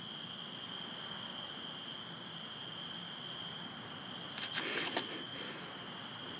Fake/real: real